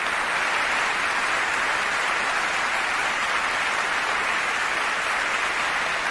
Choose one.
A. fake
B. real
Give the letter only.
B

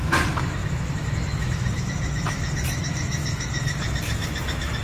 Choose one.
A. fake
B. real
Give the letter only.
A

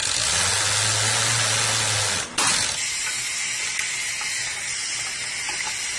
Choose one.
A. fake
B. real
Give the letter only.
B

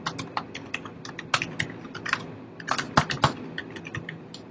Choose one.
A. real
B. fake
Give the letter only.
A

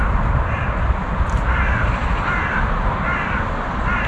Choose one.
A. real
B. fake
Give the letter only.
B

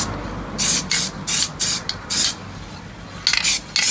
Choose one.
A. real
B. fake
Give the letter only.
A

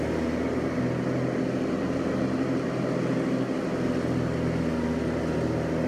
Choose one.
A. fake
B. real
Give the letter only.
B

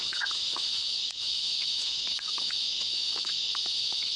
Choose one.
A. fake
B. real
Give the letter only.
A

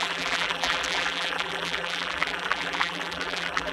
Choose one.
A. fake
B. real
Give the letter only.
A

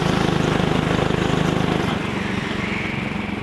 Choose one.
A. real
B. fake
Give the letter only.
A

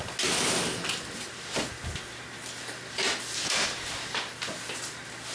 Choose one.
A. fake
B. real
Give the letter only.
B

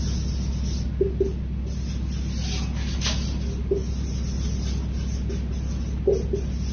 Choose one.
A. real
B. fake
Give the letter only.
A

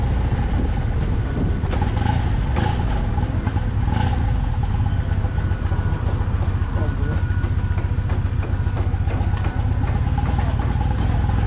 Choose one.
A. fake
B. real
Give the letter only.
B